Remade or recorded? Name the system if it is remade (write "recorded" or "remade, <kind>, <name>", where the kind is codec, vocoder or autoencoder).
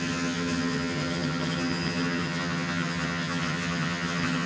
remade, vocoder, HiFi-GAN